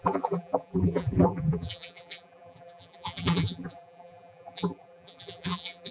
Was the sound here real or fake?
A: fake